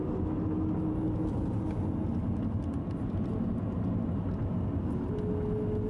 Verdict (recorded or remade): recorded